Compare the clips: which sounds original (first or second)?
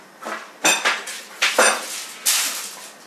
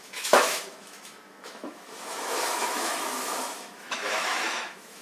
first